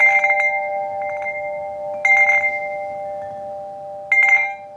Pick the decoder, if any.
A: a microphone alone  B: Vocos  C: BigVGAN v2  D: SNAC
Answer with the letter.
A